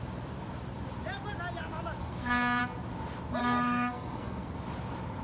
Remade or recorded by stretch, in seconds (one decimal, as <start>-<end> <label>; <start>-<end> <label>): 0.0-2.0 recorded; 2.0-2.6 remade; 2.6-3.4 recorded; 3.4-4.5 remade; 4.5-5.2 recorded